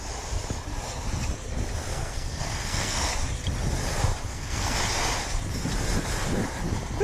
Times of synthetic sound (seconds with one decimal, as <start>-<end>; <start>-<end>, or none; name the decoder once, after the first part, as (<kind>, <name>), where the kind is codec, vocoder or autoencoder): 1.9-3.1 (codec, SNAC); 4.3-4.8